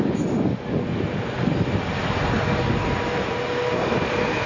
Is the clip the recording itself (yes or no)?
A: yes